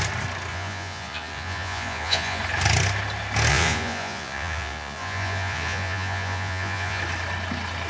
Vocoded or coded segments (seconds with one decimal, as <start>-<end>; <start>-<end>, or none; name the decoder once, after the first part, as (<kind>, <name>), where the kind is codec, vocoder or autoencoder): 0.5-2.4 (vocoder, Vocos); 3.5-7.0